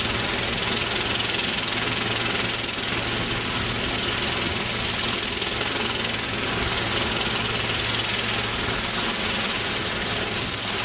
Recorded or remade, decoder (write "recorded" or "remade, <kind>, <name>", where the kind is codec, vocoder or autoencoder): recorded